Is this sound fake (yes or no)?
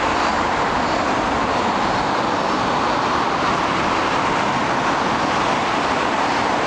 no